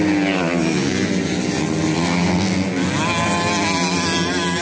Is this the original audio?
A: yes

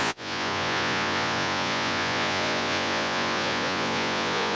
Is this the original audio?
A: no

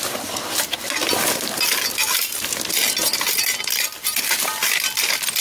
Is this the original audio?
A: yes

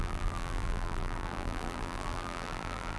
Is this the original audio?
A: no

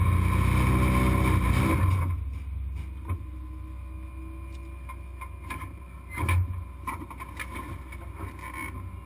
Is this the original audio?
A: yes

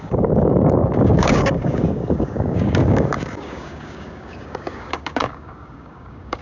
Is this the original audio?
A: no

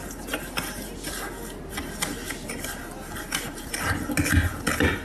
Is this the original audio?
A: yes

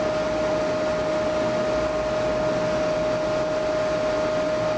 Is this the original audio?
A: yes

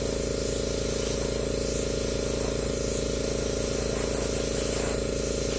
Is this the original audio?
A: yes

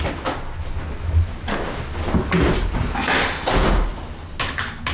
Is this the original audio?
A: yes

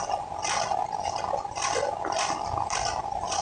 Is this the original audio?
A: yes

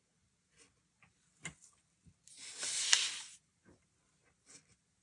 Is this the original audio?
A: yes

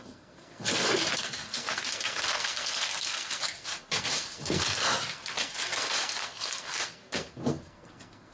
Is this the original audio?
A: no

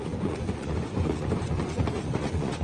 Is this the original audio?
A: no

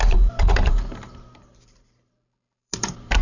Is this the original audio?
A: no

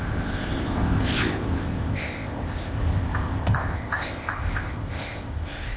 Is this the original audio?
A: no